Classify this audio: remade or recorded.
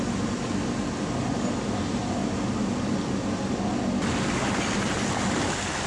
recorded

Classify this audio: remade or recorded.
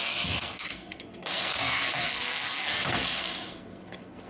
remade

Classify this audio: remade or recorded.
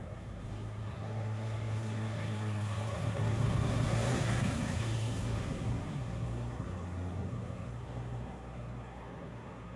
remade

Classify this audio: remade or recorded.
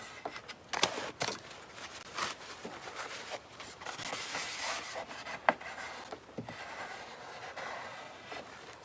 recorded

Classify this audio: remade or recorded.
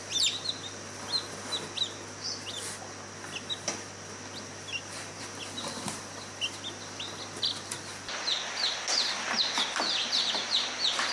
recorded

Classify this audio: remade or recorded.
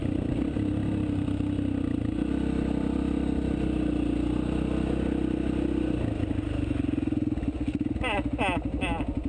recorded